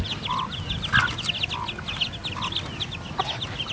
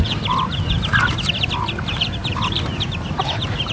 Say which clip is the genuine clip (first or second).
first